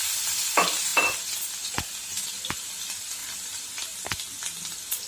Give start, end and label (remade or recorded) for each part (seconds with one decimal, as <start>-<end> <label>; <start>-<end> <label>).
0.0-3.2 recorded; 3.2-4.1 remade; 4.1-5.1 recorded